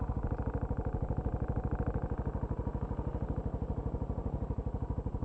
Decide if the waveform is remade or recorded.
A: recorded